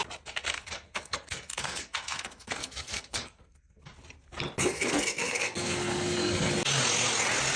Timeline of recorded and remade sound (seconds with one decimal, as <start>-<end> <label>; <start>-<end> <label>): 0.0-0.4 recorded; 0.4-3.8 remade; 3.8-4.6 recorded; 4.6-6.5 remade; 6.5-7.6 recorded